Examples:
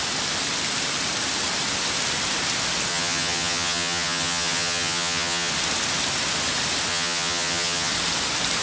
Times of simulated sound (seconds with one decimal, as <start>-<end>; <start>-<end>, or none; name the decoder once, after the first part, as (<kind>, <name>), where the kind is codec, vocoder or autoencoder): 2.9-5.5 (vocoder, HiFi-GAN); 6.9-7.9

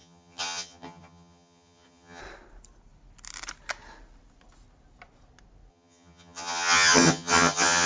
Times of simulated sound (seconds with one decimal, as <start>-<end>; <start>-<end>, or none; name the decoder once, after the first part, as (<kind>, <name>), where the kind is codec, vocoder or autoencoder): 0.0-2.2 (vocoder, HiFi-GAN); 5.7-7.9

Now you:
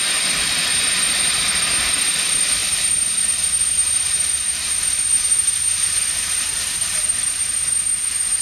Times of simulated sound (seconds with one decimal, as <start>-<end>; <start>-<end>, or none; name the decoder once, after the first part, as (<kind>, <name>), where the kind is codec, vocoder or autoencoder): 0.0-0.7 (vocoder, BigVGAN v2); 1.9-8.4